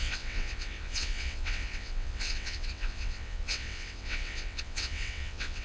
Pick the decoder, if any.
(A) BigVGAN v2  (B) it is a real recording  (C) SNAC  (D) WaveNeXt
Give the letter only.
D